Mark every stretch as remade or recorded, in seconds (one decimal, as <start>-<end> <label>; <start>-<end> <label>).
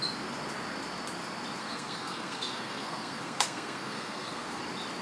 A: 0.0-1.6 recorded; 1.6-4.6 remade; 4.6-5.0 recorded